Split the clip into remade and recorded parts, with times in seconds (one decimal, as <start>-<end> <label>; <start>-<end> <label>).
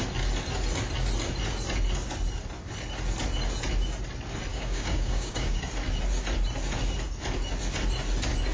0.0-4.5 recorded; 4.5-5.6 remade; 5.6-8.5 recorded